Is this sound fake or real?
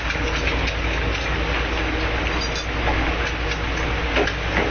real